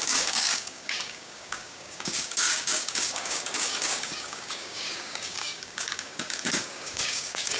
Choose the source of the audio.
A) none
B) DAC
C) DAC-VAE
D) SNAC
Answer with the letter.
B